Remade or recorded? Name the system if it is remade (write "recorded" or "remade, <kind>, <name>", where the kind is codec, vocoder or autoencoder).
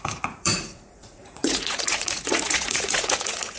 remade, vocoder, Vocos